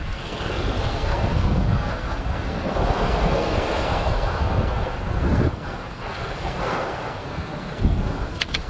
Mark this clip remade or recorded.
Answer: remade